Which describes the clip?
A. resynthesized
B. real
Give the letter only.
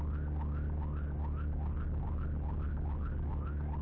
B